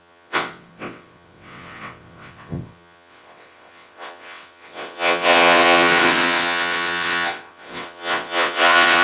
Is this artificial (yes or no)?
yes